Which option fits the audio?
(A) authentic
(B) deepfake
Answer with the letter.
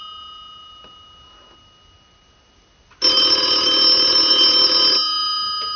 A